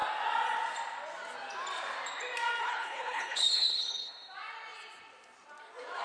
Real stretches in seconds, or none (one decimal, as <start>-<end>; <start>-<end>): 0.0-2.6; 4.1-6.0